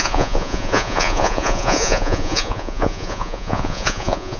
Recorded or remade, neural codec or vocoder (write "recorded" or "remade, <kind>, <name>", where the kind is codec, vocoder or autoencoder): remade, vocoder, Vocos